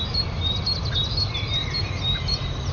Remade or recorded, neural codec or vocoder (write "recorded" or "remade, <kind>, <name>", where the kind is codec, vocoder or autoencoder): remade, vocoder, BigVGAN v2